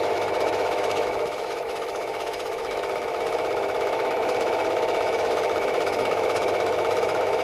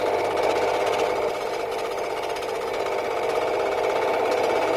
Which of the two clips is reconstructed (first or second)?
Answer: first